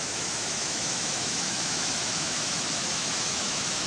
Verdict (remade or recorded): remade